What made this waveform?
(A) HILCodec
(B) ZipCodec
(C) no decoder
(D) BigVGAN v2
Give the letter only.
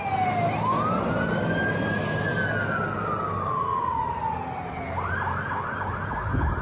C